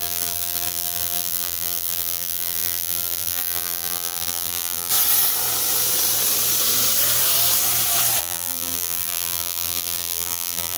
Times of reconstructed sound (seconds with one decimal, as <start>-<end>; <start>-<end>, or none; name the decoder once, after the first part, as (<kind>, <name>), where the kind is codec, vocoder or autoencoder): 0.0-4.9 (vocoder, BigVGAN v2); 8.2-10.8